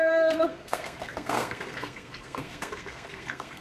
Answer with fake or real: fake